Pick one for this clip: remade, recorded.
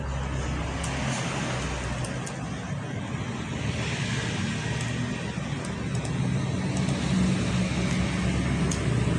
recorded